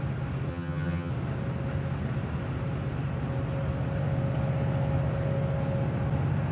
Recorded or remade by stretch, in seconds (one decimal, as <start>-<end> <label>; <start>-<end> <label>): 0.0-0.5 recorded; 0.5-1.1 remade; 1.1-6.5 recorded